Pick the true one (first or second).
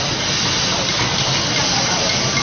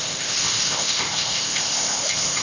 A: first